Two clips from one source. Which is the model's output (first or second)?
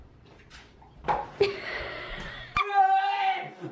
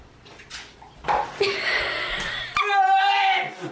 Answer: first